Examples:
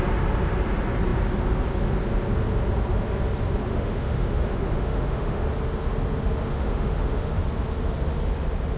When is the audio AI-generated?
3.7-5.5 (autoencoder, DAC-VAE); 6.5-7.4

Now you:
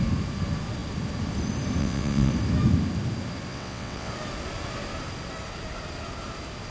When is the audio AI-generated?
1.8-2.3 (vocoder, WaveNeXt); 3.5-4.1